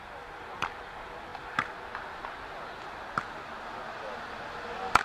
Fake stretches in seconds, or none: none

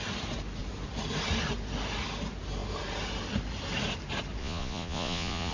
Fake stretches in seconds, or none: 4.4-5.5 (vocoder, Vocos)